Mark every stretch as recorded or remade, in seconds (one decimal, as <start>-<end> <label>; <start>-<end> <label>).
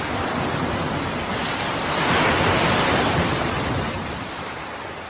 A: 0.0-1.4 recorded; 1.4-4.5 remade; 4.5-5.1 recorded